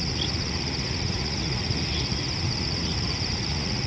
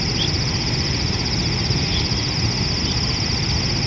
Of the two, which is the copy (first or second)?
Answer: first